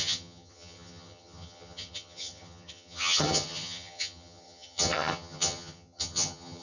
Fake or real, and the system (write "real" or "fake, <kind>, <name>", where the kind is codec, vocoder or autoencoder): fake, vocoder, HiFi-GAN